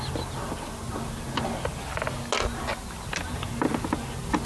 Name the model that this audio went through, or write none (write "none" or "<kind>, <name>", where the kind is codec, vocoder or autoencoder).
none